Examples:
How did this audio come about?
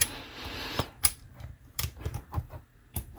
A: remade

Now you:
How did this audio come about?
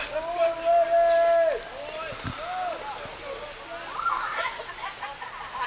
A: recorded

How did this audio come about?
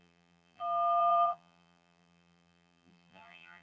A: remade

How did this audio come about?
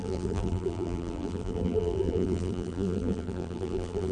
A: remade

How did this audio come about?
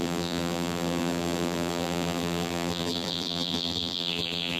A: remade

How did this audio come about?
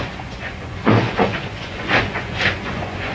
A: remade